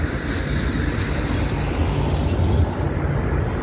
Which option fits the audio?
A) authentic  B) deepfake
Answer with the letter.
A